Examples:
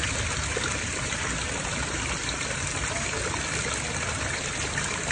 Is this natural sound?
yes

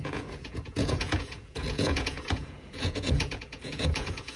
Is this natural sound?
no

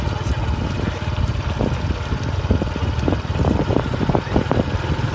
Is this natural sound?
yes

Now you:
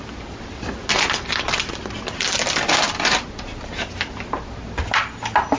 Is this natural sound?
yes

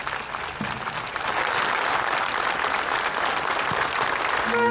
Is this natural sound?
yes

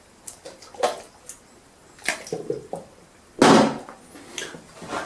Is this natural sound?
yes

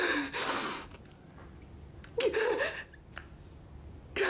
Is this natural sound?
yes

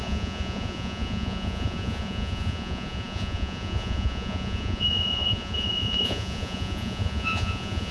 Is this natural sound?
no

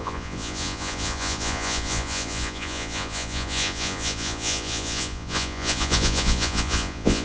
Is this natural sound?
no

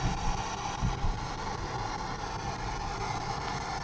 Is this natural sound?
yes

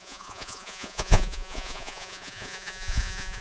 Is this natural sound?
no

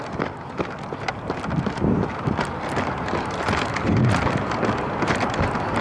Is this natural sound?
yes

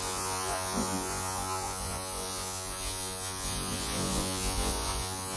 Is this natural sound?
no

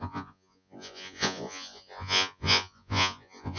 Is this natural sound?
no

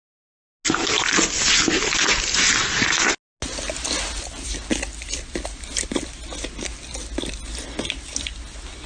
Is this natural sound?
yes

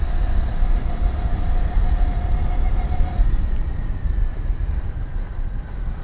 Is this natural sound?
yes